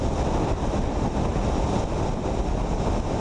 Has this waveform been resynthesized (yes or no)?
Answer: no